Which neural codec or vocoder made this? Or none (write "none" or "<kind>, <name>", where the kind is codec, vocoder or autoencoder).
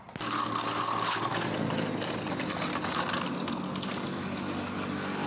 none